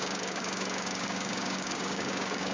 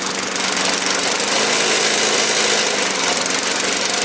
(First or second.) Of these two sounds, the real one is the second